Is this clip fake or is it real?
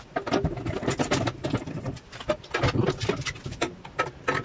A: real